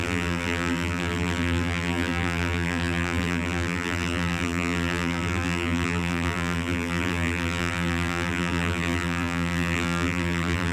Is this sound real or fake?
fake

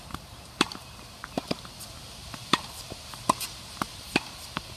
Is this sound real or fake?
fake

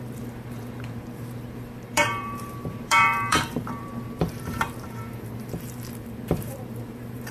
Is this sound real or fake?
fake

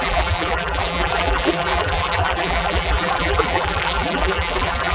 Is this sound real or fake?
fake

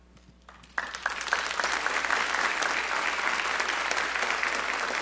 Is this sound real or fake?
real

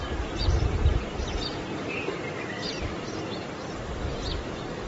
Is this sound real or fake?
real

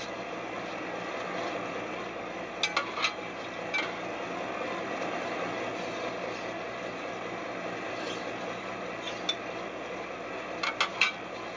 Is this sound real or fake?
real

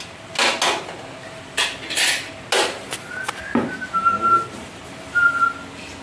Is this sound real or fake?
real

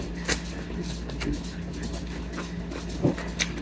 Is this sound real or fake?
real